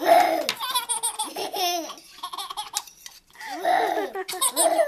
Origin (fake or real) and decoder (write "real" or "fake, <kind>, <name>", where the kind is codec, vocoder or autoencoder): real